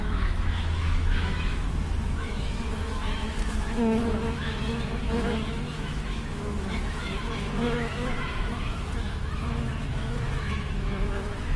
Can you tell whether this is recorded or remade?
remade